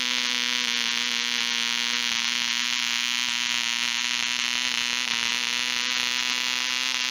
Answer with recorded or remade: recorded